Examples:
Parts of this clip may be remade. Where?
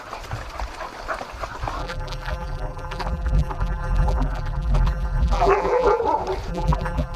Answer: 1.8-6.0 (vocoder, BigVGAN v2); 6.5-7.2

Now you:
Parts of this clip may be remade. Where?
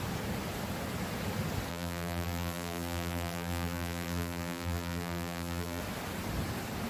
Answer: 1.7-5.8 (vocoder, BigVGAN v2)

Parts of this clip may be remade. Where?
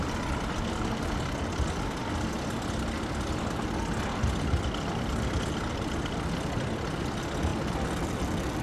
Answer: none